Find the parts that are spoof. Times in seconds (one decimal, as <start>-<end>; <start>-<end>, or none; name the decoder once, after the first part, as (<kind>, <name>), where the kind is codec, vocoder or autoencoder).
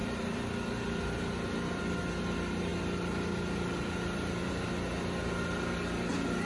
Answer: 0.0-1.8 (vocoder, BigVGAN v2)